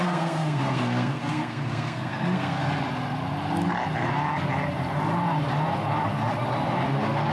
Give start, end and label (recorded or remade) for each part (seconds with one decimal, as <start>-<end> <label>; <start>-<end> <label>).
0.0-2.6 remade; 2.6-7.3 recorded